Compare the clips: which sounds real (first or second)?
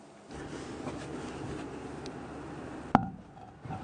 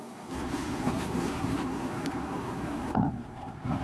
first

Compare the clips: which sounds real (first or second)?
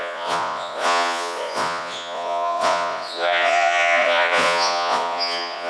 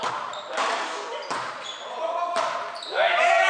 second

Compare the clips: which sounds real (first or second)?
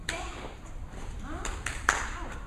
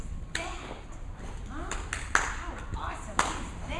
second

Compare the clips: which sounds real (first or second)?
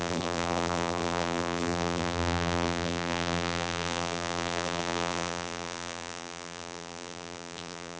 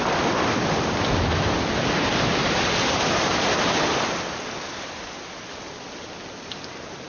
second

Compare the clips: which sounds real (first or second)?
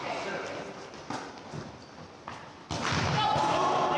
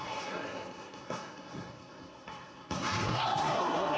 first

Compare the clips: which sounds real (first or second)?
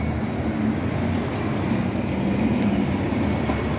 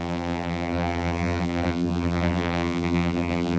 first